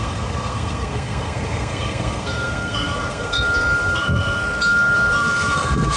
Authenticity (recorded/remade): remade